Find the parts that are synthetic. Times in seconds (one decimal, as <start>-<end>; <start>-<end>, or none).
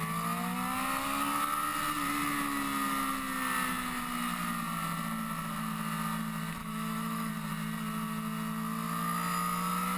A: 6.6-7.3